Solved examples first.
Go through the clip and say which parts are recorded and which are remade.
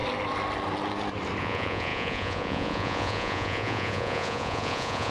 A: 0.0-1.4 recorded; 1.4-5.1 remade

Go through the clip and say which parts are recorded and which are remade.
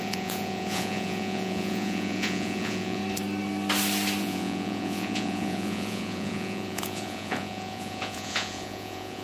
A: 0.0-3.0 remade; 3.0-4.2 recorded; 4.2-9.2 remade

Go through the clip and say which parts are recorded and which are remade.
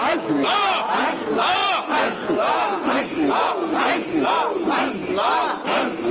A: 0.0-5.0 remade; 5.0-6.1 recorded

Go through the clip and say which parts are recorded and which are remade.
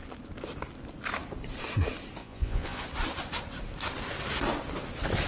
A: 0.0-2.2 recorded; 2.2-2.8 remade; 2.8-5.3 recorded